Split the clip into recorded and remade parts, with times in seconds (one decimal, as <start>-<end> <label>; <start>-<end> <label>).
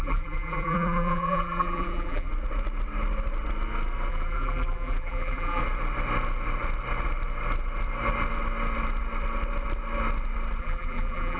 0.0-2.3 remade; 2.3-4.1 recorded; 4.1-5.6 remade; 5.6-10.6 recorded; 10.6-11.4 remade